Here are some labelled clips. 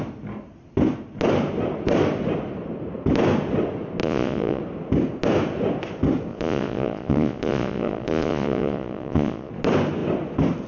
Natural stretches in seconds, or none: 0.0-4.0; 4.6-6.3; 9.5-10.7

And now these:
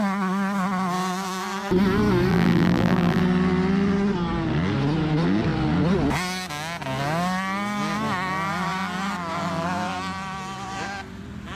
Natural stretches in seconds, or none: 0.0-2.3; 3.2-11.6

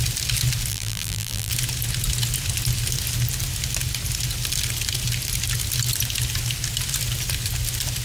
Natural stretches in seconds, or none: 0.0-0.7; 1.5-8.0